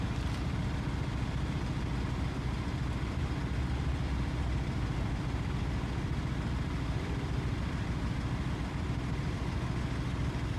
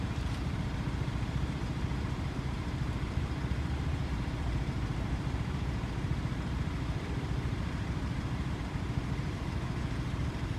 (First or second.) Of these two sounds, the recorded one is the first